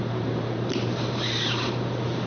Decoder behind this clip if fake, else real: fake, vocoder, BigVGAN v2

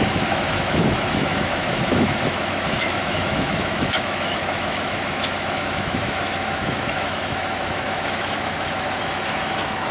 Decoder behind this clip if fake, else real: fake, autoencoder, DAC-VAE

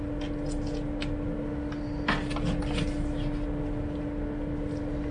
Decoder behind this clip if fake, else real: real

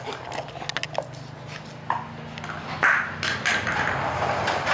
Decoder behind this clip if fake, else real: real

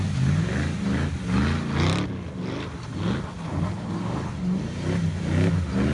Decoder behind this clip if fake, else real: real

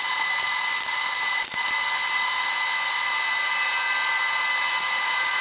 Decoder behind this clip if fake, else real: real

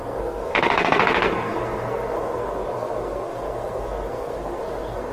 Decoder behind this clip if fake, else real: fake, codec, SNAC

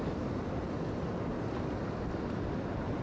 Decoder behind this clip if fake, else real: real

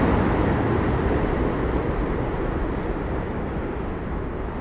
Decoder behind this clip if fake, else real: real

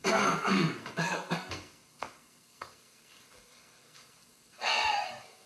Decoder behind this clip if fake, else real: fake, codec, SNAC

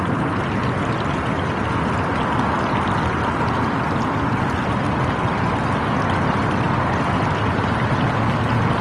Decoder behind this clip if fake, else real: real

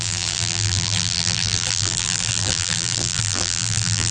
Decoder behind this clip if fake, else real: fake, vocoder, BigVGAN v2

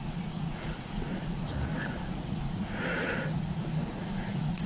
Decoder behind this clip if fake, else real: fake, vocoder, Vocos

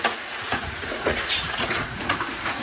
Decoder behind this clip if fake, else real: fake, vocoder, Vocos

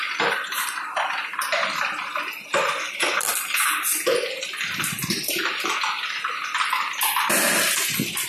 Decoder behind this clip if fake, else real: real